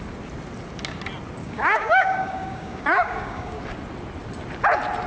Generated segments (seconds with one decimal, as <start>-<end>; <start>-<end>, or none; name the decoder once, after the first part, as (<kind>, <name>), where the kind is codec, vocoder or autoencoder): 1.4-3.6 (codec, DAC)